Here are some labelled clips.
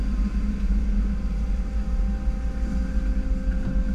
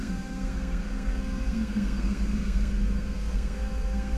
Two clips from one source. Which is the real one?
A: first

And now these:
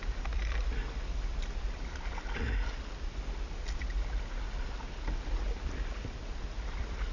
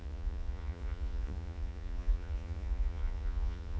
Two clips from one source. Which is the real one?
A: first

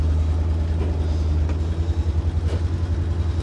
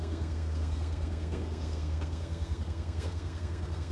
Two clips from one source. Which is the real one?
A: first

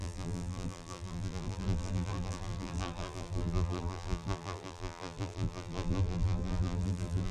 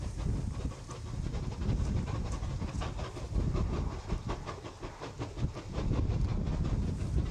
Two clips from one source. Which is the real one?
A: second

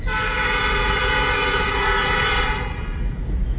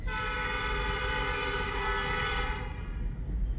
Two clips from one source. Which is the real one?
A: second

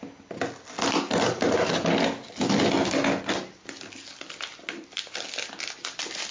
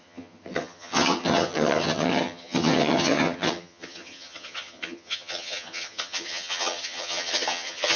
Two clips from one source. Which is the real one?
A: first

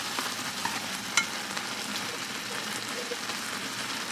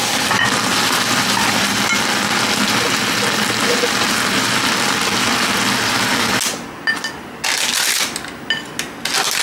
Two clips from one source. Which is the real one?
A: second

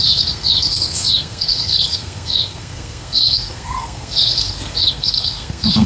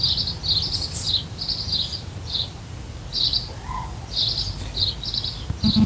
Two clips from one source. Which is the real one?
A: second